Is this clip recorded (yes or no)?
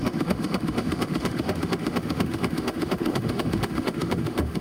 no